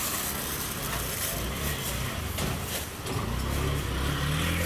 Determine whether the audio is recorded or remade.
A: recorded